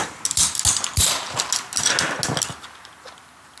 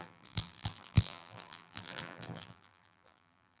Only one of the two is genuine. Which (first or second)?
first